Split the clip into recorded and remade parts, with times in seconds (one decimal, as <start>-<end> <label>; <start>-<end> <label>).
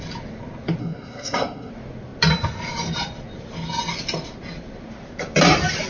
0.0-0.8 recorded; 0.8-1.7 remade; 1.7-5.9 recorded